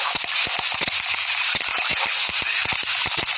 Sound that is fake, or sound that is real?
real